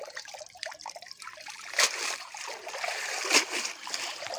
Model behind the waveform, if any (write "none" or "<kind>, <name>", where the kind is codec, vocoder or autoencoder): vocoder, BigVGAN v2